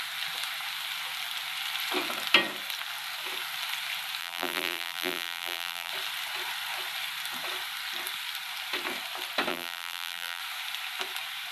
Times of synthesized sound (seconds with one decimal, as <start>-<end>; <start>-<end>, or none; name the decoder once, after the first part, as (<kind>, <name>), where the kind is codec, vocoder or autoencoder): 4.2-5.9 (vocoder, BigVGAN v2); 9.5-10.4